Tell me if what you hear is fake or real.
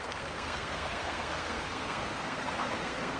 fake